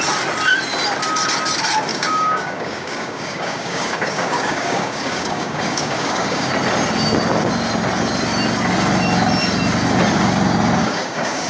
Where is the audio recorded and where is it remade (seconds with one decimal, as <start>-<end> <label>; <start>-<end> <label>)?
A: 0.0-1.9 recorded; 1.9-6.5 remade; 6.5-10.8 recorded; 10.8-11.5 remade